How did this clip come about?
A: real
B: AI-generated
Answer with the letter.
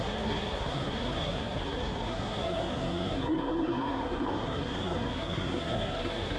B